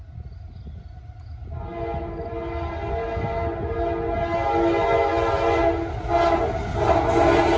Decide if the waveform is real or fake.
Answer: real